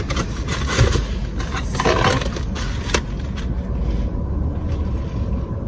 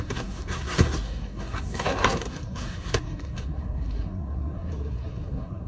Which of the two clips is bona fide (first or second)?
first